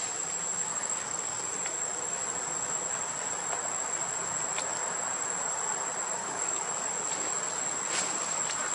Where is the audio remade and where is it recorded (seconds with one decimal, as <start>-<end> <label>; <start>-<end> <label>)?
0.0-0.6 recorded; 0.6-1.4 remade; 1.4-6.2 recorded; 6.2-6.7 remade; 6.7-8.7 recorded

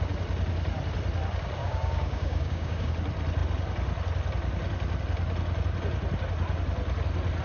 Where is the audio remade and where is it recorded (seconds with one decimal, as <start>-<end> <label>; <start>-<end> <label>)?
0.0-1.6 recorded; 1.6-2.9 remade; 2.9-7.4 recorded

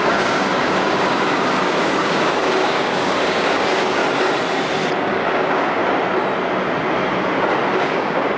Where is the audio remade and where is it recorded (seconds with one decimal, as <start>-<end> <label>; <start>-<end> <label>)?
0.0-4.0 remade; 4.0-5.0 recorded; 5.0-5.8 remade; 5.8-7.7 recorded; 7.7-8.4 remade